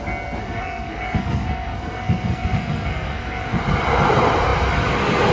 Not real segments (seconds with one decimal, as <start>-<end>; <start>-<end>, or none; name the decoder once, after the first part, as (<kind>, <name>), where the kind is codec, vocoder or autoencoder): 0.4-3.6 (codec, SNAC)